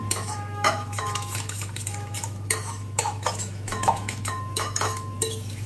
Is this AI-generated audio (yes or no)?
yes